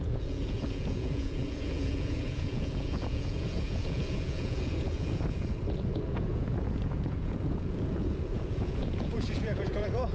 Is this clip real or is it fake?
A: fake